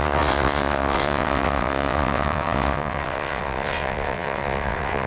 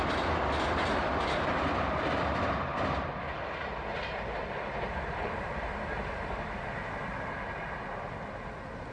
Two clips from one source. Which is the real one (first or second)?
second